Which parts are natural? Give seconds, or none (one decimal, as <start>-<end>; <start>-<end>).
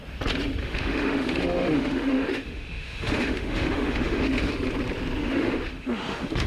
0.0-0.6; 4.5-5.2